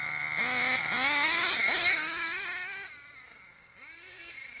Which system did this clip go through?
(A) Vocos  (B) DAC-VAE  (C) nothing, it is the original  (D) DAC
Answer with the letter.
C